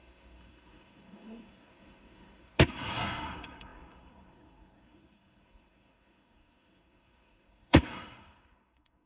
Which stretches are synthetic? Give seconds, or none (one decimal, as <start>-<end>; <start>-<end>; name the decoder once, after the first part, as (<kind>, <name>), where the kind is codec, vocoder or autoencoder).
0.0-9.1 (codec, SNAC)